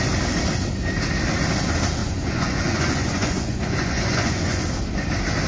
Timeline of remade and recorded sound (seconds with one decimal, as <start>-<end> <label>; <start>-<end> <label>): 0.0-2.0 recorded; 2.0-4.6 remade; 4.6-5.5 recorded